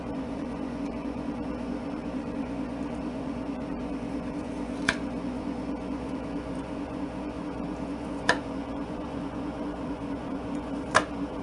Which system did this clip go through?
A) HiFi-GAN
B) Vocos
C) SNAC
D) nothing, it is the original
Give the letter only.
B